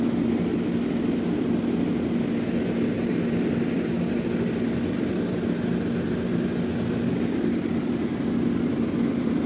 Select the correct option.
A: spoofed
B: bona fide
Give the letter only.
B